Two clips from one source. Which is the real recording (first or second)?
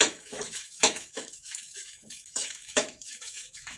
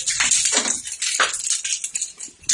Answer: second